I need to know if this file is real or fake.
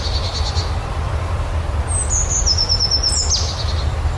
real